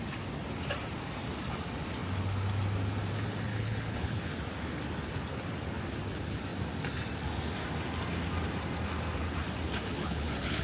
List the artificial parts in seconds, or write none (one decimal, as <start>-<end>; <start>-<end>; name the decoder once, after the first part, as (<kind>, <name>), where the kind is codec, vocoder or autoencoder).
3.5-4.3 (codec, HILCodec); 10.0-10.6